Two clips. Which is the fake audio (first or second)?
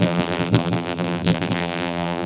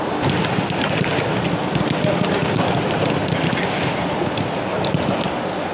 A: first